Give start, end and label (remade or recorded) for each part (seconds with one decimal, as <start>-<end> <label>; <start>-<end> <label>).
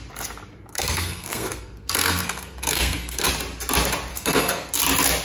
0.0-0.7 recorded; 0.7-3.3 remade; 3.3-4.1 recorded; 4.1-4.7 remade; 4.7-5.2 recorded